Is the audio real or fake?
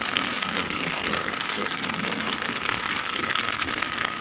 fake